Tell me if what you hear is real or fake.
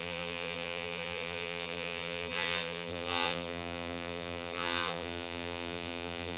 fake